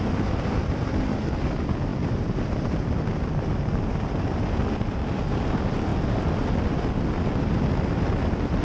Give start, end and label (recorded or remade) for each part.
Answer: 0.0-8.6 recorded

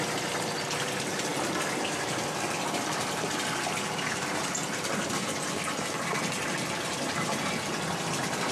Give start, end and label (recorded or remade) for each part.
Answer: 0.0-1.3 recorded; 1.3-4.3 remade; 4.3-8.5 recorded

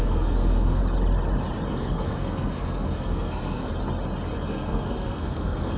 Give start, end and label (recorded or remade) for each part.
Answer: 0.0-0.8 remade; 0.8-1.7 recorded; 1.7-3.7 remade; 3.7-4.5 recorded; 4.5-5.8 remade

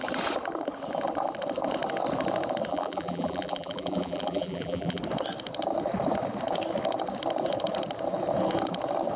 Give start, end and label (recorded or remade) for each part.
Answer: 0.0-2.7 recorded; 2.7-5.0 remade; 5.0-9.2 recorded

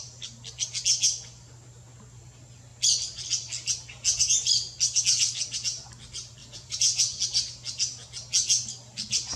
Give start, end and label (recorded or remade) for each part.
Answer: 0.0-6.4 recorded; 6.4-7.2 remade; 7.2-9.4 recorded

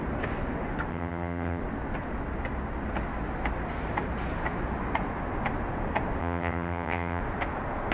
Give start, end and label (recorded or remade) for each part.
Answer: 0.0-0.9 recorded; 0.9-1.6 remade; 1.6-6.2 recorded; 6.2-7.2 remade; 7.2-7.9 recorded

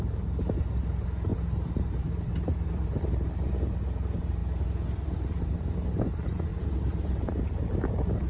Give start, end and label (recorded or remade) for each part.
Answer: 0.0-1.3 recorded; 1.3-3.5 remade; 3.5-4.4 recorded; 4.4-5.4 remade; 5.4-6.5 recorded; 6.5-8.3 remade